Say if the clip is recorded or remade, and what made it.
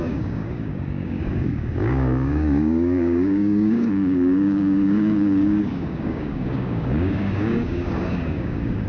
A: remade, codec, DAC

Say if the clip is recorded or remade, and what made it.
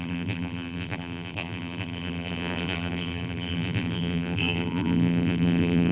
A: remade, vocoder, BigVGAN v2